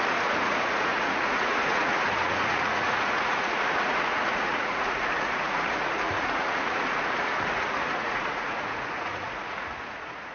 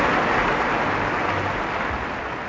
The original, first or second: second